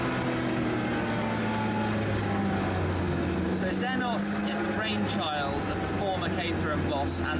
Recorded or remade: recorded